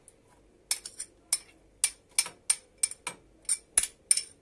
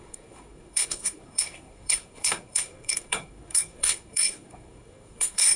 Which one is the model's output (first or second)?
second